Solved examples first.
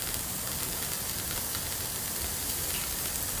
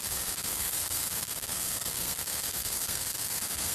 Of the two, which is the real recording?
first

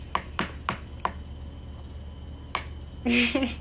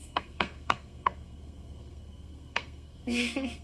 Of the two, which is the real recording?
first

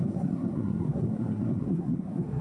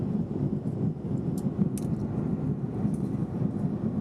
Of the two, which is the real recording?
second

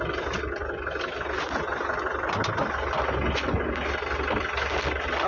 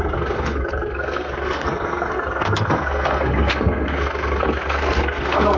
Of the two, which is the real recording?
first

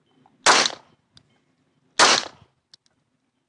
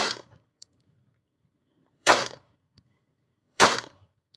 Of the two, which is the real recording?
first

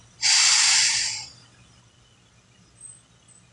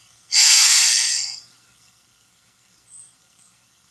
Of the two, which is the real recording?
first